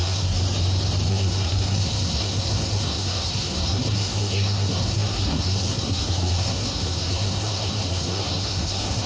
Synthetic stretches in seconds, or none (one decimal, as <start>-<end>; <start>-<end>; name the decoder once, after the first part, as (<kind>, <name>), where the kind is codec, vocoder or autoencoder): 0.0-0.4 (codec, SNAC); 1.1-9.1